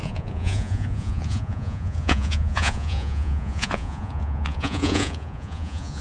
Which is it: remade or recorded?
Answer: remade